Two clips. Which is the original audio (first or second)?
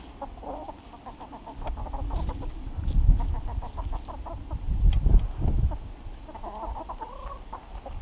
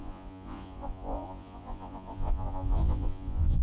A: first